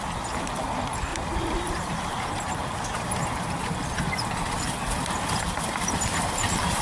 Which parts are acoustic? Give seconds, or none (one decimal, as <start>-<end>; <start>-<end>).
0.0-1.1; 3.4-6.8